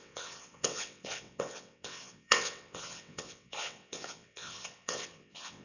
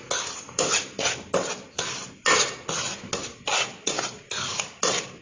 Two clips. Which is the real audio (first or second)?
second